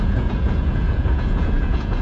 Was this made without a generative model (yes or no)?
no